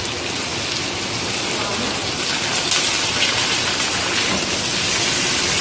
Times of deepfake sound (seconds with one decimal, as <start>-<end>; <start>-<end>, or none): none